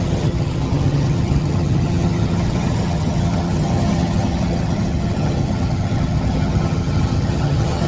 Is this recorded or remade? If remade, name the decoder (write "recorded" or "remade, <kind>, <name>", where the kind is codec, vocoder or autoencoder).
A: remade, vocoder, HiFi-GAN